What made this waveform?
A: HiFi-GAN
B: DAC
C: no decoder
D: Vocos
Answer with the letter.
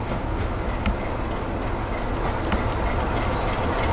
C